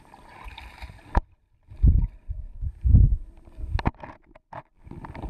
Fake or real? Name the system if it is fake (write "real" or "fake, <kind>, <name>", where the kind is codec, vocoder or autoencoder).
real